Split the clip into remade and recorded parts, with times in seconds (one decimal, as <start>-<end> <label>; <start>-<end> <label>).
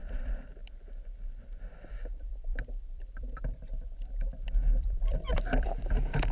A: 0.0-0.6 remade; 0.6-1.4 recorded; 1.4-6.3 remade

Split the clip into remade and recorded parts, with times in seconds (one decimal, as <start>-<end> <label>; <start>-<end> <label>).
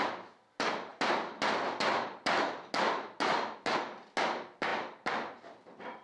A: 0.0-6.0 recorded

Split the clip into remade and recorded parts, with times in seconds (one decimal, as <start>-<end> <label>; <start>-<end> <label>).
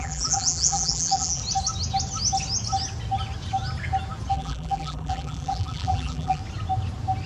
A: 0.0-1.4 remade; 1.4-4.3 recorded; 4.3-6.4 remade; 6.4-7.3 recorded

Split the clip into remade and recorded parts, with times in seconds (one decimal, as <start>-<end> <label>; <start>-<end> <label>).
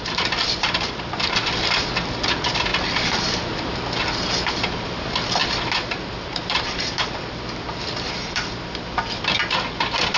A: 0.0-2.7 remade; 2.7-4.5 recorded; 4.5-5.4 remade; 5.4-6.2 recorded; 6.2-10.2 remade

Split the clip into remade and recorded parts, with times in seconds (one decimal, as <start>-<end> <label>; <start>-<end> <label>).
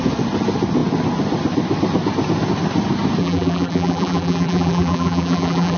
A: 0.0-3.2 recorded; 3.2-5.8 remade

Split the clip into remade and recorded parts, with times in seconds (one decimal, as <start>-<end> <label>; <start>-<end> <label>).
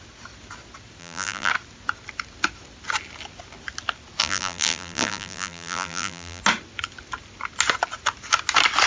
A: 0.0-1.0 recorded; 1.0-1.5 remade; 1.5-4.2 recorded; 4.2-6.4 remade; 6.4-8.9 recorded